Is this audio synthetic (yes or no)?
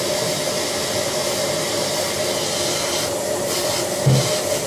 no